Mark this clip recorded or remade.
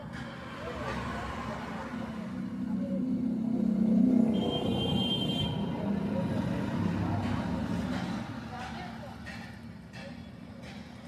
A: recorded